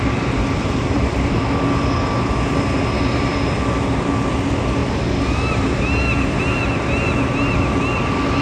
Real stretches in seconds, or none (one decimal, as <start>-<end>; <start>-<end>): 0.0-8.4